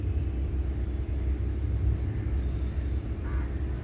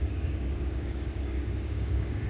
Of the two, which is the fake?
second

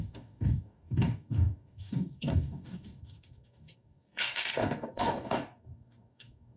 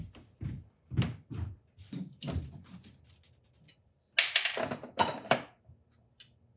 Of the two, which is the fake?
first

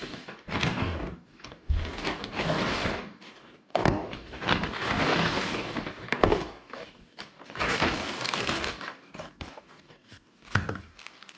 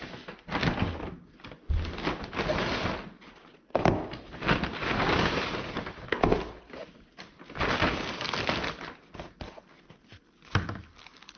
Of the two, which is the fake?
first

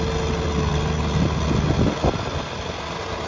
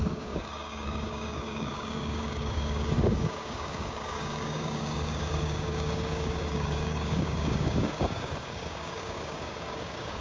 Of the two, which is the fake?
second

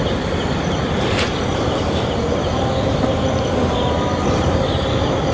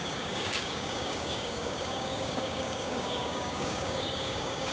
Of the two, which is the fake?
second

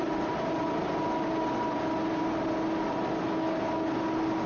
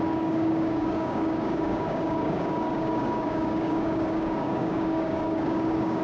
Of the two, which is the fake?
second